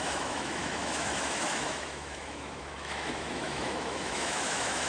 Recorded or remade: remade